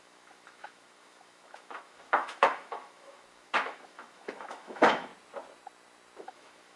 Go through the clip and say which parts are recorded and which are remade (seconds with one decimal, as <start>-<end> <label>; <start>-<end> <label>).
0.0-5.1 remade; 5.1-6.2 recorded; 6.2-6.8 remade